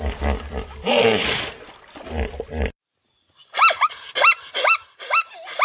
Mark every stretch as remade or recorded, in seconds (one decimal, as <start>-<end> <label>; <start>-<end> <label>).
0.0-5.6 recorded